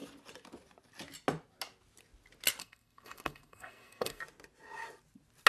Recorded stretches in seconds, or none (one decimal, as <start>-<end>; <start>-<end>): 0.0-2.6; 4.2-5.5